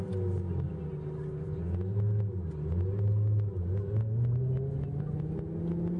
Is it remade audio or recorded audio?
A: recorded